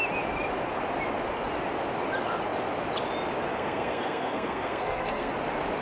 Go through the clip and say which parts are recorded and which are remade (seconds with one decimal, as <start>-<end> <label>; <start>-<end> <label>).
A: 0.0-3.5 recorded; 3.5-5.3 remade; 5.3-5.8 recorded